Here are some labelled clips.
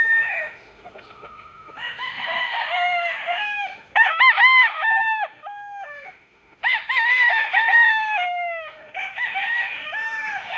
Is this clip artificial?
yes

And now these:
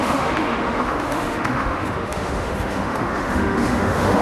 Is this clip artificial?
yes